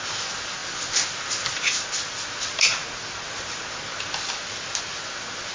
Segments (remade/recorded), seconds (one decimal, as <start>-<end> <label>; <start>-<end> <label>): 0.0-5.5 recorded